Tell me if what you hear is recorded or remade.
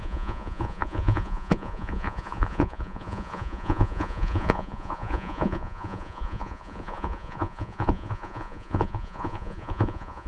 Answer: remade